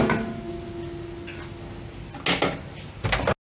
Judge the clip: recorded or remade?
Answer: recorded